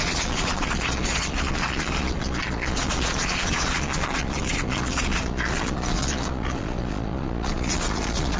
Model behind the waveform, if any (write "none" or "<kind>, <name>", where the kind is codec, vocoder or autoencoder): vocoder, Vocos